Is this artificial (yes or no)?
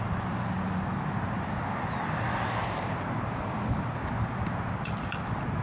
no